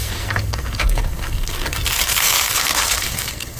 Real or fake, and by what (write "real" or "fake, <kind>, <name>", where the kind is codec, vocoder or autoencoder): fake, codec, SNAC